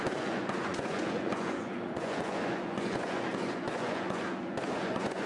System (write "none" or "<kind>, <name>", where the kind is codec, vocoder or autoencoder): vocoder, Vocos